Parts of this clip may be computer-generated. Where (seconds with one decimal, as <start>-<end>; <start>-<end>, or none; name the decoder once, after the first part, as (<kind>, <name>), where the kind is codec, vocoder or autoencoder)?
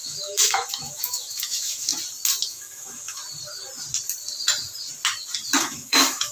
0.0-1.9 (autoencoder, DAC-VAE); 2.5-3.2; 5.6-6.3